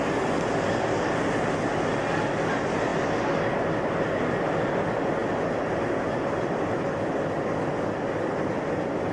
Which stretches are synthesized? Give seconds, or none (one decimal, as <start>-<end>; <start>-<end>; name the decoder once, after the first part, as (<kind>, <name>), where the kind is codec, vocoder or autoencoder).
none